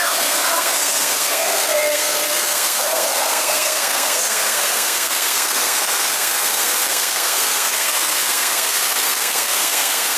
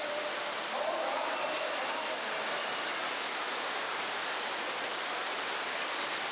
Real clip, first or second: second